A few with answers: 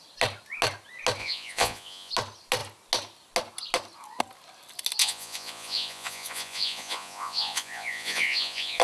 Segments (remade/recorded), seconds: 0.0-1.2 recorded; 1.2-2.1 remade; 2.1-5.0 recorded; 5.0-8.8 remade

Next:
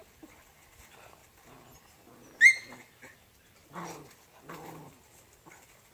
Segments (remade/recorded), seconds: 0.0-5.9 recorded